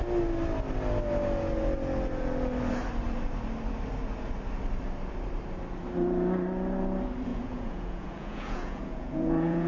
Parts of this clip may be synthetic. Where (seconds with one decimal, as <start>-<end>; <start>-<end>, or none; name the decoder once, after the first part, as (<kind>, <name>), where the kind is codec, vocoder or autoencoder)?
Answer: 7.3-9.7 (vocoder, Vocos)